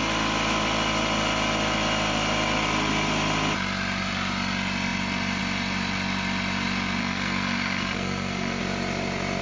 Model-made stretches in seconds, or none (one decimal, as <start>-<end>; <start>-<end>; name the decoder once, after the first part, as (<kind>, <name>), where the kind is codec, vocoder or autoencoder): 7.0-8.6 (codec, SNAC)